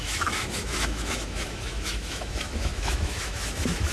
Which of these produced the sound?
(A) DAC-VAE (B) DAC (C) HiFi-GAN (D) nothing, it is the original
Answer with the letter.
A